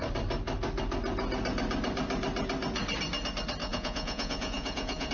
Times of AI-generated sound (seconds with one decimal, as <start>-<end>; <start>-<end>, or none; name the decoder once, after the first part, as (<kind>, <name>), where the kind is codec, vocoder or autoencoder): 3.6-5.1 (vocoder, Vocos)